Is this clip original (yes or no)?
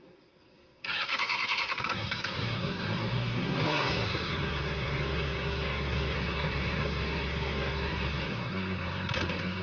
no